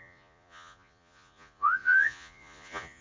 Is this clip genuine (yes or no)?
no